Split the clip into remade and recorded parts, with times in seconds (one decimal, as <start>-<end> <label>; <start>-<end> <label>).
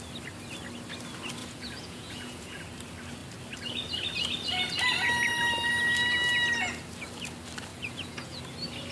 0.0-1.4 recorded; 1.4-2.6 remade; 2.6-7.7 recorded; 7.7-8.4 remade; 8.4-8.9 recorded